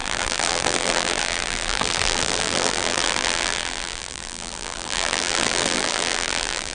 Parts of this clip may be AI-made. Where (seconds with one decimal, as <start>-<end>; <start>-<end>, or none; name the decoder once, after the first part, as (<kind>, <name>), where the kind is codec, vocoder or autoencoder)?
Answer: 0.0-6.7 (vocoder, BigVGAN v2)